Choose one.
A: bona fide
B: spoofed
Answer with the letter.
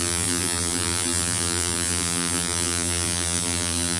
B